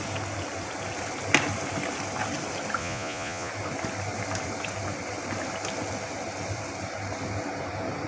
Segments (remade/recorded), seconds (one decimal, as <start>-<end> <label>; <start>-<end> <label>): 0.0-2.8 recorded; 2.8-3.5 remade; 3.5-8.1 recorded